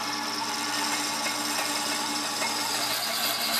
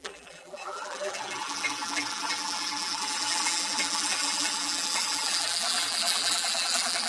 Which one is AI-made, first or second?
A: second